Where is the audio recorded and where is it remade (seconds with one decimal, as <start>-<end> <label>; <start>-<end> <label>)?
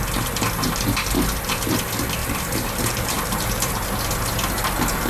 0.0-2.2 recorded; 2.2-3.7 remade; 3.7-5.1 recorded